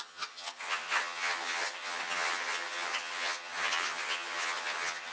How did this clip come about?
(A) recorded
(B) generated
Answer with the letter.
B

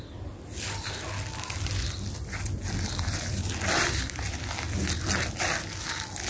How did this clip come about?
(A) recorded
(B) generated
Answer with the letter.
A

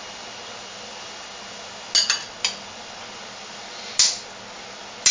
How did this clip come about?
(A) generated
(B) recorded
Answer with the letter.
B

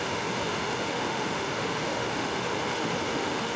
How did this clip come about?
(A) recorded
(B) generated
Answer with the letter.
B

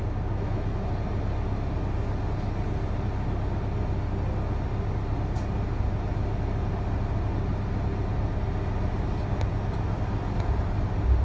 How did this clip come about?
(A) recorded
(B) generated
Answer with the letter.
A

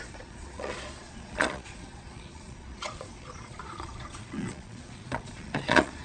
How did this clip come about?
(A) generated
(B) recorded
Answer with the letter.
A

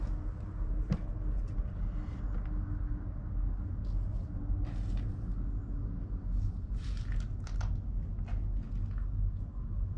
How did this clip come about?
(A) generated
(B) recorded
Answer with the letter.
B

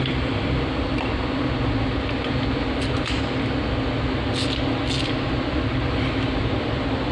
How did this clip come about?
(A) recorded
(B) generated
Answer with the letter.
A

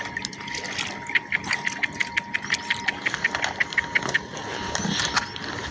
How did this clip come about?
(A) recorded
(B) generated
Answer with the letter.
A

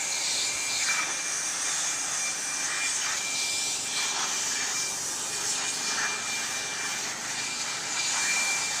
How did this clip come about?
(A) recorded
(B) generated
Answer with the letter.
A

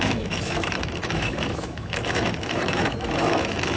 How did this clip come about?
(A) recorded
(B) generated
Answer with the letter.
B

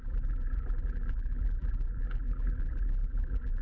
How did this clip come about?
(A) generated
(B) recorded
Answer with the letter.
A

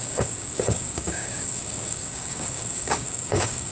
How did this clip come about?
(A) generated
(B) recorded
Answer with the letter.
A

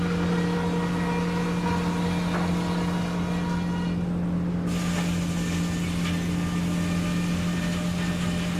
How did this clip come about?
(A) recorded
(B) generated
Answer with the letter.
A